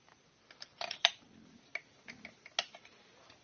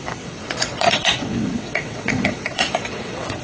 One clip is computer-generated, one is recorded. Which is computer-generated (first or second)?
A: second